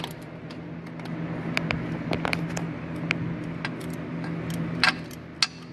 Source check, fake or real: real